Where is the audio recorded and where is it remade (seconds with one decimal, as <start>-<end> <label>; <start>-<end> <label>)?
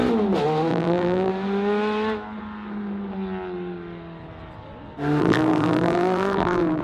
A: 0.0-0.7 recorded; 0.7-1.3 remade; 1.3-5.2 recorded; 5.2-6.8 remade